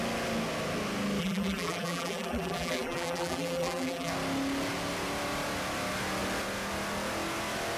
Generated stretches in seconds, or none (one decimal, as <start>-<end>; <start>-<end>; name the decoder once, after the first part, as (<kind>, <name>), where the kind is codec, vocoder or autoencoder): 1.2-4.1 (vocoder, BigVGAN v2)

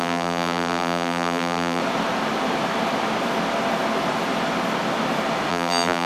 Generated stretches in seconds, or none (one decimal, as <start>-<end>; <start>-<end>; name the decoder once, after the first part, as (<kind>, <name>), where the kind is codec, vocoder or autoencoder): 0.0-1.8 (vocoder, BigVGAN v2); 5.5-6.1

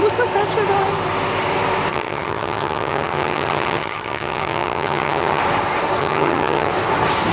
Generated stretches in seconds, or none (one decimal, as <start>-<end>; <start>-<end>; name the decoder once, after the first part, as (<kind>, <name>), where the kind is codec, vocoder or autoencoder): 1.9-5.4 (vocoder, HiFi-GAN); 6.0-6.7

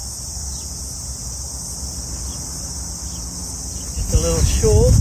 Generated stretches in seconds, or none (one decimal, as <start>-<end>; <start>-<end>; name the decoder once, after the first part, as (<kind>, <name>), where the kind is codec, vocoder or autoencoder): none

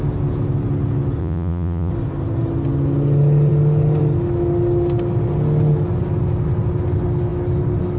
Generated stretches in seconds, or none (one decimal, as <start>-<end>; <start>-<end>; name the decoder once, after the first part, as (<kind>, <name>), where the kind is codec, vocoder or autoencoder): 1.2-1.9 (vocoder, Vocos)

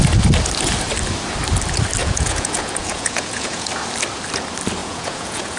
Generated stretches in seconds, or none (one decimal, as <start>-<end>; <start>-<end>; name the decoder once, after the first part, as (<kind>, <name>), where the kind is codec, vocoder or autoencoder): 2.0-3.7 (vocoder, Vocos); 4.8-5.6

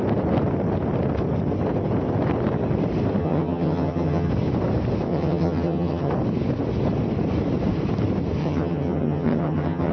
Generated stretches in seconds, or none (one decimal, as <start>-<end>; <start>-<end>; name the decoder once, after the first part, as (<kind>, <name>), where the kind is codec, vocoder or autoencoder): 3.2-4.3 (vocoder, HiFi-GAN); 5.1-6.1; 8.4-9.9